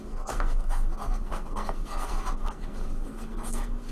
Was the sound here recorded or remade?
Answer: remade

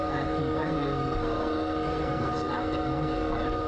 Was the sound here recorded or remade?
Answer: remade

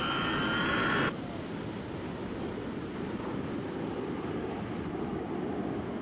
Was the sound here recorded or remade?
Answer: recorded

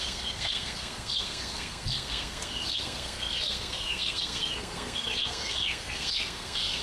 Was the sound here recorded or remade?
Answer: remade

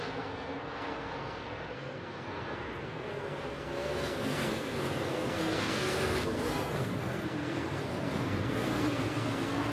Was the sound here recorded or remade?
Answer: remade